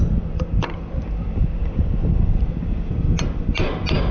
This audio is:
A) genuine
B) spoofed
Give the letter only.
A